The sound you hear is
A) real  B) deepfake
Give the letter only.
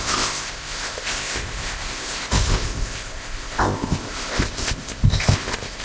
B